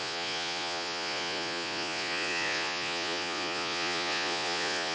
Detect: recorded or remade remade